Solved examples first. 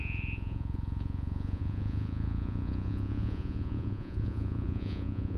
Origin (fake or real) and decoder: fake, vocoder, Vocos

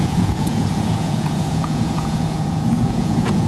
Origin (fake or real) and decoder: fake, vocoder, Vocos